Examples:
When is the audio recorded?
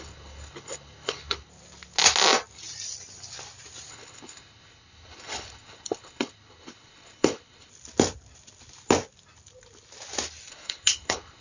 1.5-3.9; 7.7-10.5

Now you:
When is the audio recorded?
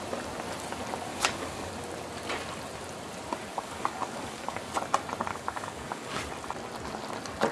0.0-1.1; 1.7-3.5; 4.7-5.3; 6.2-7.5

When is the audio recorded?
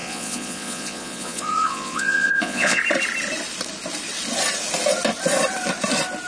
2.8-6.3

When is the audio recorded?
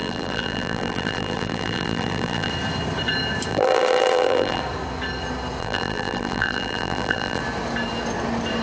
2.5-3.5; 4.6-5.6; 7.4-8.6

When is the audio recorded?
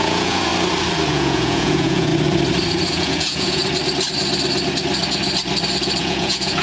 0.5-1.1; 2.1-2.9; 3.6-6.0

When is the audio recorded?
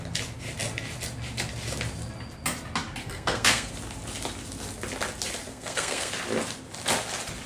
0.0-3.0; 3.7-5.5; 6.1-7.5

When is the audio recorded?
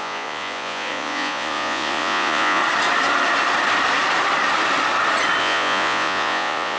2.6-5.4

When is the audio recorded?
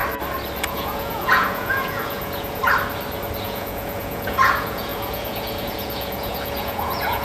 0.0-0.7; 2.6-3.4